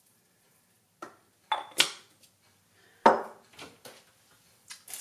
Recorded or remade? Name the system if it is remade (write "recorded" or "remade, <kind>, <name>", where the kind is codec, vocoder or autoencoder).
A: recorded